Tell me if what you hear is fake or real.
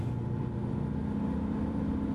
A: fake